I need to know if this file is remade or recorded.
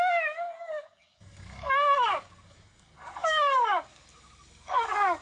remade